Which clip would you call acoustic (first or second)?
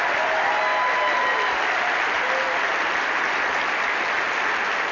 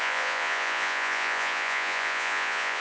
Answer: first